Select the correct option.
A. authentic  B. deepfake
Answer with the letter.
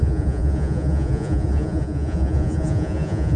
B